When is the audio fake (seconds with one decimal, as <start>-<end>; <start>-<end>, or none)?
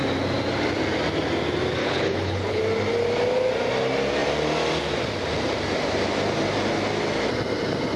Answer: 1.8-2.6